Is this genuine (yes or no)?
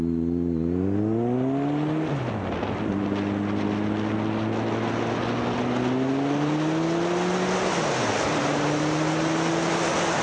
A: yes